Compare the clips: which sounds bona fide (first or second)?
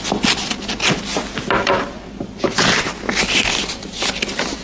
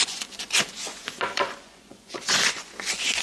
first